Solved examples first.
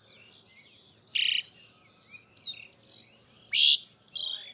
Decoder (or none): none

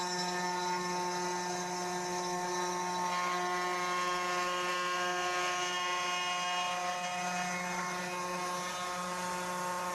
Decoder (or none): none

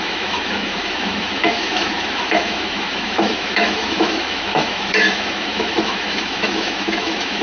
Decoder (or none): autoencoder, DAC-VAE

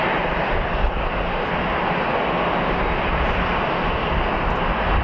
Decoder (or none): none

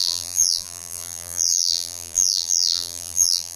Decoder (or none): vocoder, BigVGAN v2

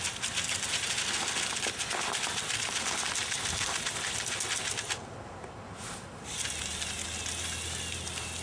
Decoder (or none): none